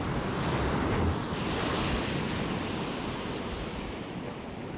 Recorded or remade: recorded